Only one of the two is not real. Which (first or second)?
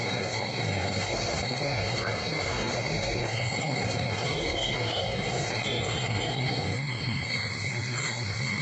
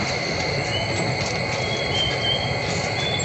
first